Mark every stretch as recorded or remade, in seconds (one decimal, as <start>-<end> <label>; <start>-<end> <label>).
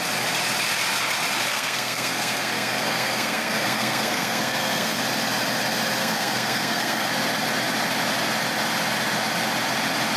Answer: 0.0-1.5 recorded; 1.5-5.0 remade; 5.0-6.0 recorded; 6.0-7.1 remade; 7.1-10.2 recorded